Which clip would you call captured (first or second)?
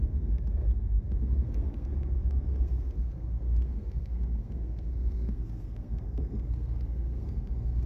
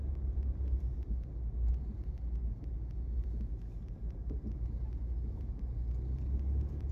second